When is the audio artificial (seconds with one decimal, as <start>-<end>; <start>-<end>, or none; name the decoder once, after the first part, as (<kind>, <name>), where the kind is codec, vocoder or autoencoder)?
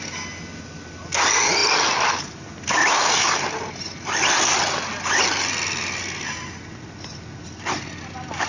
none